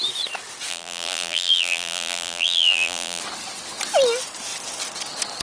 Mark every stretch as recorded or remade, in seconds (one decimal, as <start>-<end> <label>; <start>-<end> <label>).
0.0-0.7 recorded; 0.7-3.2 remade; 3.2-5.4 recorded

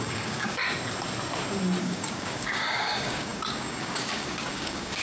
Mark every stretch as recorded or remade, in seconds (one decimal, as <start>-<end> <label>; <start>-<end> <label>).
0.0-0.6 remade; 0.6-1.8 recorded; 1.8-5.0 remade